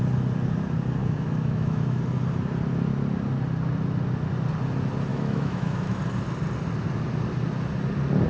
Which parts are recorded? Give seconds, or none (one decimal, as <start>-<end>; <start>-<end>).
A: 0.0-1.0; 2.0-5.1; 6.0-8.3